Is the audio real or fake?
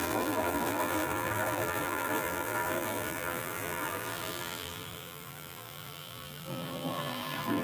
fake